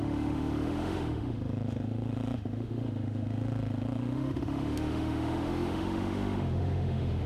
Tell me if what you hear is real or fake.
fake